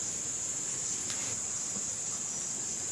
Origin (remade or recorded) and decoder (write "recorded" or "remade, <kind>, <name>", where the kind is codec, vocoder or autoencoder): recorded